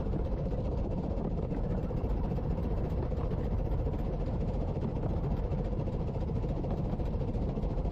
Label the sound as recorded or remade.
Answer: remade